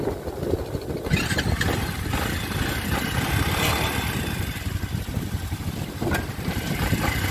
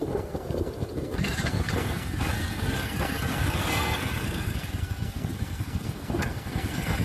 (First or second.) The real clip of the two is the first